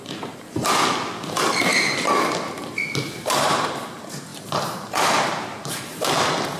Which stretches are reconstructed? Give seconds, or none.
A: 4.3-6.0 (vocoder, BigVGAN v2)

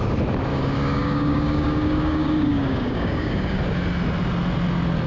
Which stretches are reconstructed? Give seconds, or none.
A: 0.5-3.6 (codec, DAC)

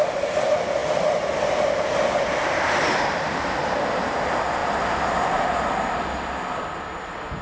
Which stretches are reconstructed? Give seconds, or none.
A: none

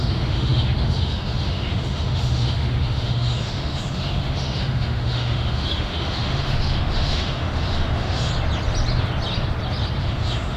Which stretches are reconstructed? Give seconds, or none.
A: 0.0-8.3 (autoencoder, DAC-VAE); 10.0-10.6